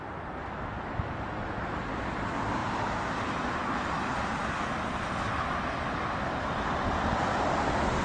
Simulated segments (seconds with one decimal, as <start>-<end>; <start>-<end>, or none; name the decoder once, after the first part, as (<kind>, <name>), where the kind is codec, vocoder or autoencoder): none